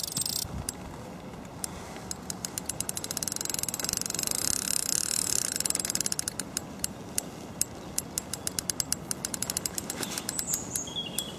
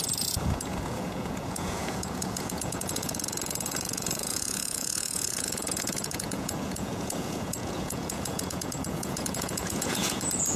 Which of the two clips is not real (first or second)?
second